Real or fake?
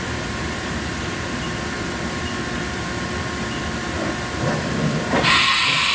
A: fake